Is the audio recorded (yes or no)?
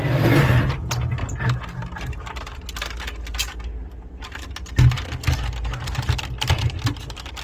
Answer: yes